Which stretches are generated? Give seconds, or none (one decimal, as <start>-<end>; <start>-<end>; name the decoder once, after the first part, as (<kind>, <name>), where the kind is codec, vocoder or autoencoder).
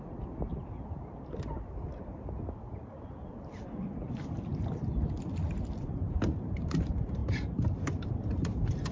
0.0-0.5 (vocoder, BigVGAN v2); 4.1-4.5; 5.8-8.9